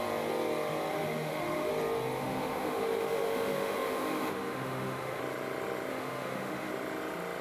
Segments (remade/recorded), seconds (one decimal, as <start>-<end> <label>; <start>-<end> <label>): 0.0-0.9 recorded; 0.9-1.7 remade; 1.7-2.2 recorded; 2.2-5.2 remade; 5.2-5.9 recorded; 5.9-6.7 remade; 6.7-7.4 recorded